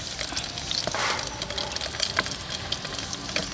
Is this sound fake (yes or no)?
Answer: no